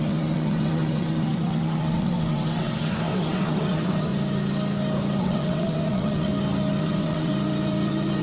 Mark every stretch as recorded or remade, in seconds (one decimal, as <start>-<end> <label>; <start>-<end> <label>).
0.0-4.1 remade; 4.1-5.2 recorded; 5.2-6.3 remade; 6.3-6.8 recorded; 6.8-7.3 remade; 7.3-8.2 recorded